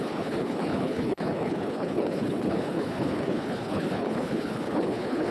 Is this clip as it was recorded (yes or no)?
no